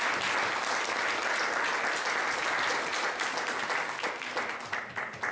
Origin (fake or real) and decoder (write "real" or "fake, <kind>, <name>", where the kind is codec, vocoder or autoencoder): real